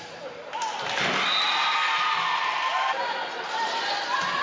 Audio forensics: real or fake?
real